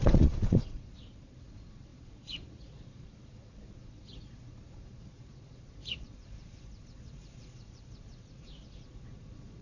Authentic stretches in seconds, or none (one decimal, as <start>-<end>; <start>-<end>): none